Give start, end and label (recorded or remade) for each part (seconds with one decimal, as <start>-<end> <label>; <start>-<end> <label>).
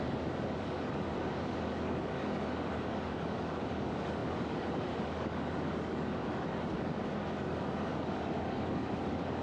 0.0-9.4 remade